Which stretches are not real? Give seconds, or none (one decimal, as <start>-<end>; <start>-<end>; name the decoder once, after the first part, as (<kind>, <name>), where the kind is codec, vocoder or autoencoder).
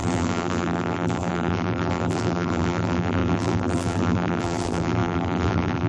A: 0.0-5.9 (vocoder, BigVGAN v2)